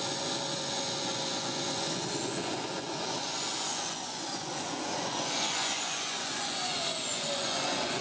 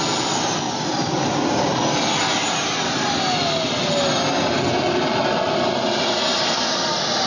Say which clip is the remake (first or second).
first